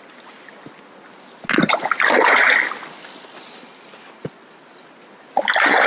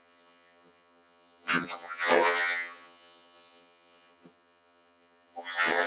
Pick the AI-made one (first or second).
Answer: second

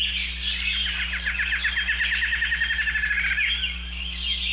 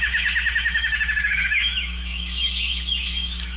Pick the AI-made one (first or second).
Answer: second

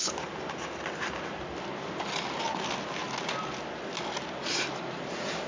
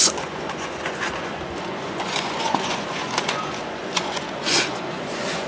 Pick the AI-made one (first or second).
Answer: second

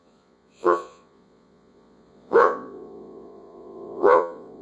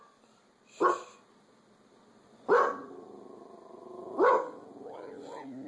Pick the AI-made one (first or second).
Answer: first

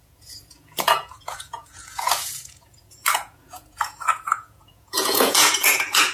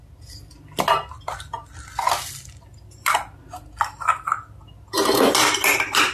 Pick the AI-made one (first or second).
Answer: first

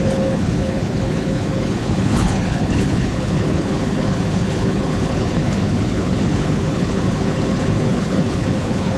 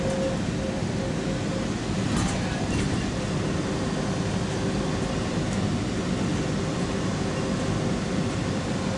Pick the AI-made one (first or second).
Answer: first